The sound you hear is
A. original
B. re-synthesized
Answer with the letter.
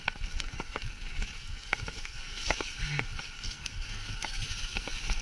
B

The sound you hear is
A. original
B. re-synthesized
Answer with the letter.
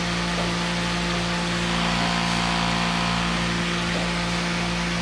A